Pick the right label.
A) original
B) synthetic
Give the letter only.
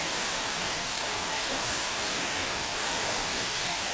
B